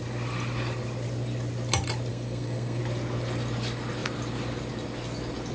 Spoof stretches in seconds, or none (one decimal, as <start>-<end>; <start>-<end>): 2.1-2.8